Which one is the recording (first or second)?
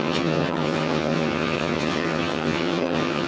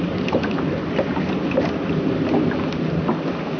second